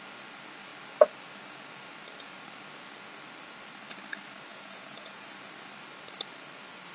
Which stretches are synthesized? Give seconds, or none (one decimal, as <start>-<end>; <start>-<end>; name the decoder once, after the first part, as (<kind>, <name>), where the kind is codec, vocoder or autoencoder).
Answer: 4.5-5.3 (vocoder, Vocos)

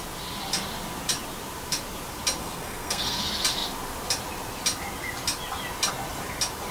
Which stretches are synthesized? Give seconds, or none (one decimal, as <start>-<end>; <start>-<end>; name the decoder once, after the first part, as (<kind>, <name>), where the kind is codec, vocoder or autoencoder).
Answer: 2.4-3.2 (codec, SNAC)

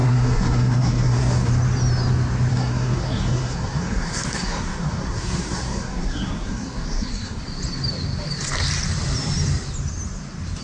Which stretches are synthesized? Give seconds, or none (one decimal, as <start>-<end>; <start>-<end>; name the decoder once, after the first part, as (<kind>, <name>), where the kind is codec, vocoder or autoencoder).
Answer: 0.0-1.5 (codec, SNAC); 2.5-7.4

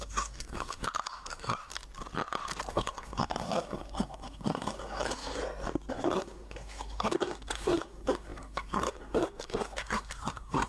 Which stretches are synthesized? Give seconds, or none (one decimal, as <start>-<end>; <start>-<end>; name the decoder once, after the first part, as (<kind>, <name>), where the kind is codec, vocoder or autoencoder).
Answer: 0.0-1.7 (codec, SNAC); 2.7-5.4; 5.9-10.7

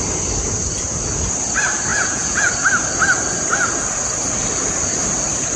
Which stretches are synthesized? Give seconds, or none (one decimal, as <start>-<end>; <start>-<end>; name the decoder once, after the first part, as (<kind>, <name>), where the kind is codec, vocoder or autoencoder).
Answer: 1.9-2.5 (vocoder, Vocos)

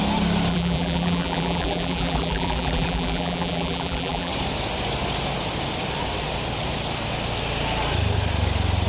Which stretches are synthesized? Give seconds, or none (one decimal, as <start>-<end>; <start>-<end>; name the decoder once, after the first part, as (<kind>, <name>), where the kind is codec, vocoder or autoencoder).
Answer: 0.5-4.3 (vocoder, BigVGAN v2)